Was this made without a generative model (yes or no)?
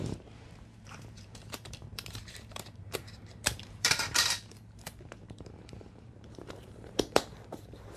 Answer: no